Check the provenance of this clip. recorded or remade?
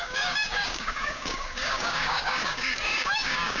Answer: remade